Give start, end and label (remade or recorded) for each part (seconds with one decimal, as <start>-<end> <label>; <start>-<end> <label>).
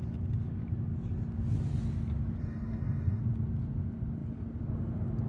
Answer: 0.0-2.4 recorded; 2.4-3.2 remade; 3.2-5.3 recorded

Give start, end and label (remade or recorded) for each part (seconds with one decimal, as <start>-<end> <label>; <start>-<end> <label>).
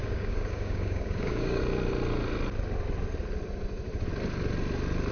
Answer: 0.0-1.6 remade; 1.6-5.1 recorded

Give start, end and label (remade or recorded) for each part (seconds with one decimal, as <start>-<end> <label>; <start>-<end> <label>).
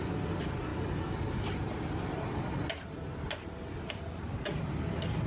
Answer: 0.0-5.3 recorded